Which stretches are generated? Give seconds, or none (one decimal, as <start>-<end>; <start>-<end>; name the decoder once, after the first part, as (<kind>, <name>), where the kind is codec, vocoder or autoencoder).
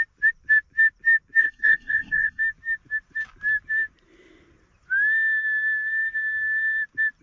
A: 1.4-2.4 (codec, SNAC)